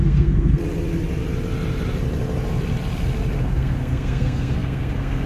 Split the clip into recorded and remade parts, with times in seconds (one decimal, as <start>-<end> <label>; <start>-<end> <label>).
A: 0.0-0.6 remade; 0.6-3.4 recorded; 3.4-5.3 remade